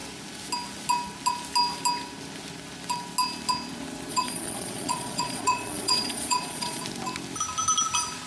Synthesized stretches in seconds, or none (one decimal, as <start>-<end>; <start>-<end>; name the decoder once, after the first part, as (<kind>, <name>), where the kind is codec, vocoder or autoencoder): 4.1-6.8 (vocoder, Vocos)